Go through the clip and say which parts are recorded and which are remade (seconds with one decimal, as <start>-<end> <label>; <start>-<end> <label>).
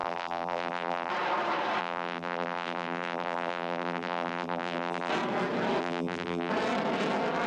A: 0.0-1.1 remade; 1.1-1.8 recorded; 1.8-5.1 remade; 5.1-5.8 recorded; 5.8-6.5 remade; 6.5-7.5 recorded